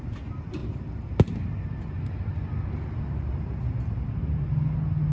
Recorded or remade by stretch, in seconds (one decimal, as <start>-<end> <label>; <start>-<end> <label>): 0.0-5.1 recorded